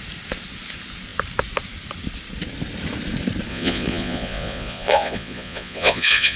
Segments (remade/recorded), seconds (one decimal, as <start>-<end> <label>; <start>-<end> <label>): 0.0-3.5 recorded; 3.5-6.4 remade